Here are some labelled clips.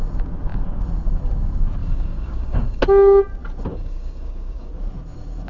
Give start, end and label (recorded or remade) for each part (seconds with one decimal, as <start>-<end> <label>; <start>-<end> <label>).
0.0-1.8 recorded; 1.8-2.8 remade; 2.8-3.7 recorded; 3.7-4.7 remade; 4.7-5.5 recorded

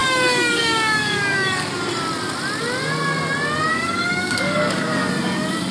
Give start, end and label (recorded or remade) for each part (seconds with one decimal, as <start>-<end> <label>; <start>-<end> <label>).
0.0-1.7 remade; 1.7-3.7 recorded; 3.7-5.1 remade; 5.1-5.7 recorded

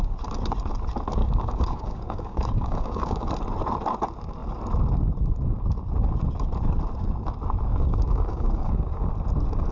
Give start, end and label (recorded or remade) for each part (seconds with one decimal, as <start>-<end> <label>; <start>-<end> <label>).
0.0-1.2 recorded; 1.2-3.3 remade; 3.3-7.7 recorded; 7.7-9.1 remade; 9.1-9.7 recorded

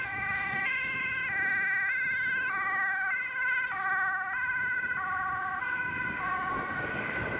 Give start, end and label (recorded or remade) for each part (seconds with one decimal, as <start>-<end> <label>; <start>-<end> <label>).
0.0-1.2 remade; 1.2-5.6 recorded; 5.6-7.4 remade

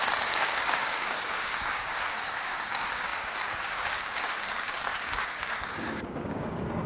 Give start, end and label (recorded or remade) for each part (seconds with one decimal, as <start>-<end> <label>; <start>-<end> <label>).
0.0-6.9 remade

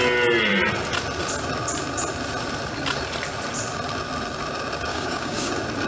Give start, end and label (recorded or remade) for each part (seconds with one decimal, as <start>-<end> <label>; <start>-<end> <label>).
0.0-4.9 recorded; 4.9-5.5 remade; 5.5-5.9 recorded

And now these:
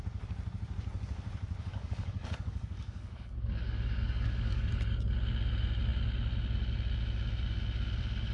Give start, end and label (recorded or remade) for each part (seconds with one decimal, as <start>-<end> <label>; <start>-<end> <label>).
0.0-1.7 recorded; 1.7-4.7 remade; 4.7-8.3 recorded